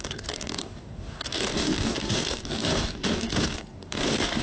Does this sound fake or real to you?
fake